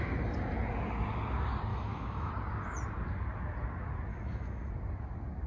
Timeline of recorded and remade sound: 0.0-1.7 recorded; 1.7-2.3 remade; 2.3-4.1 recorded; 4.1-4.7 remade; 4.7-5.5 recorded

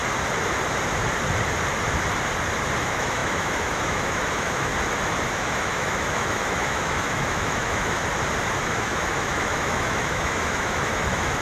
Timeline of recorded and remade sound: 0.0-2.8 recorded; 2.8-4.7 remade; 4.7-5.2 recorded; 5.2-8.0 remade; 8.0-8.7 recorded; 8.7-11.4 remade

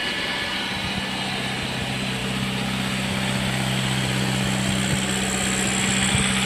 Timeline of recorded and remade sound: 0.0-6.5 recorded